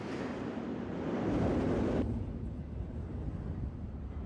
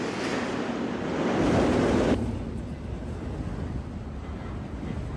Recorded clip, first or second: second